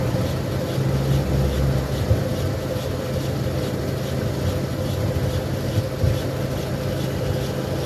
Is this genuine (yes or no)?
yes